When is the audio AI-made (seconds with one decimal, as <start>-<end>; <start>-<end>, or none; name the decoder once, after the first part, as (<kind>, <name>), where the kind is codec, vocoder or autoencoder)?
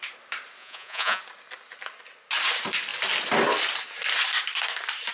0.6-1.2 (vocoder, Vocos)